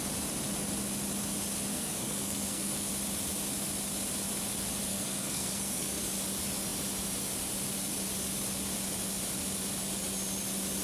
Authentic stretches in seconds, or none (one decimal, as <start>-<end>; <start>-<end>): 0.0-1.7; 2.9-4.9; 6.0-10.8